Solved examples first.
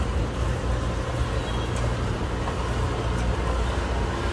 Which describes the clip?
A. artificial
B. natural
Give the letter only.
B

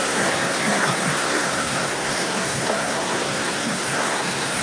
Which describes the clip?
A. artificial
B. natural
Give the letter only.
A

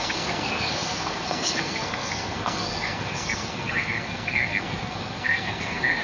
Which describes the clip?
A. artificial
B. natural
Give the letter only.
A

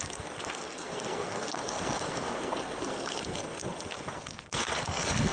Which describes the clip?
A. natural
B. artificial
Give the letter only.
B